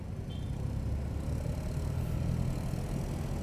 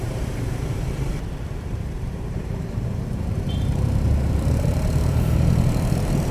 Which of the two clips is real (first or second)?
first